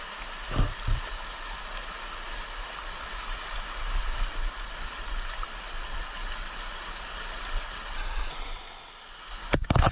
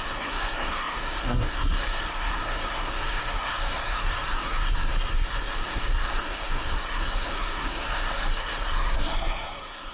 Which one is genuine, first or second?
first